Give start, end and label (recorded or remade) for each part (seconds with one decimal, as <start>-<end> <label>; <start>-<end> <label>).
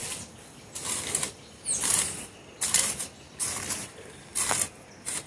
0.0-5.3 recorded